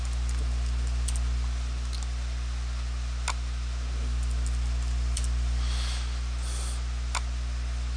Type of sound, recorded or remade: recorded